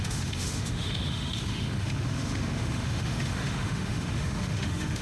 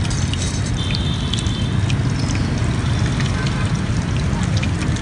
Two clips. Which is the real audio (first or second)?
second